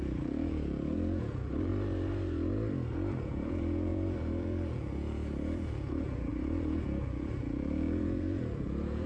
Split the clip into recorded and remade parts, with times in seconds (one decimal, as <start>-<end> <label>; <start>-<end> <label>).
0.0-1.7 remade; 1.7-3.2 recorded; 3.2-9.1 remade